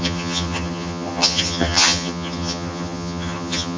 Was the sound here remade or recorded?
remade